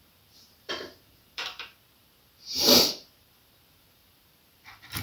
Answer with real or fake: fake